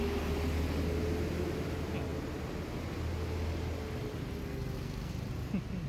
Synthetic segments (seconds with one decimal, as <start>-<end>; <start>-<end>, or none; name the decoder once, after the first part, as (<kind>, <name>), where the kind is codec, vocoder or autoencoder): 4.4-5.1 (codec, SNAC)